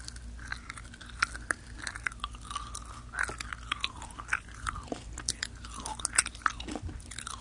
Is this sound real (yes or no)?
yes